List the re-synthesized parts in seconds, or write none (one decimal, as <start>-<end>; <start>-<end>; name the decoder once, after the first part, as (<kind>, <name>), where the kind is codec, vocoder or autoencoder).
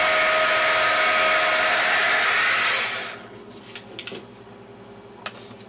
3.0-3.6 (codec, HILCodec)